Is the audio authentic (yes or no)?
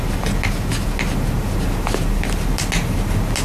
yes